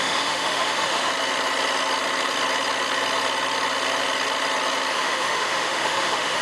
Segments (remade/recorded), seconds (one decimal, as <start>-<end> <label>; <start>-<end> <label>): 0.0-1.1 remade; 1.1-4.9 recorded; 4.9-6.4 remade